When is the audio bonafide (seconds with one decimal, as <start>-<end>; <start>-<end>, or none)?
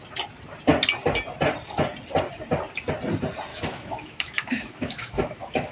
0.0-3.5